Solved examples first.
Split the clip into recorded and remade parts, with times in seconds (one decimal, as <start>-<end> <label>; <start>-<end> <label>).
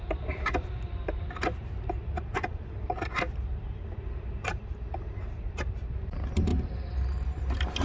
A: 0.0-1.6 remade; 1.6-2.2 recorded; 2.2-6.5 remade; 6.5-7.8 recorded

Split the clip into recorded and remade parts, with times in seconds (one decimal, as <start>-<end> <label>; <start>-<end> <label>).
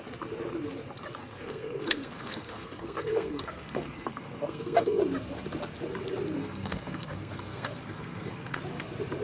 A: 0.0-1.2 recorded; 1.2-5.0 remade; 5.0-6.4 recorded; 6.4-8.6 remade; 8.6-9.2 recorded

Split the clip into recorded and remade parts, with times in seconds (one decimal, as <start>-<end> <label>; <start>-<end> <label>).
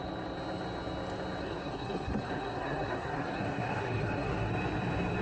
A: 0.0-1.4 recorded; 1.4-4.5 remade; 4.5-5.2 recorded